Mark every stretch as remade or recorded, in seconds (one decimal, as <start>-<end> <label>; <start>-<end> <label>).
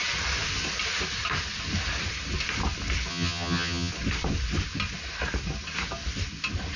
0.0-3.1 recorded; 3.1-3.9 remade; 3.9-6.8 recorded